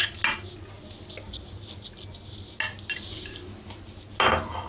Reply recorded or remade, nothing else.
recorded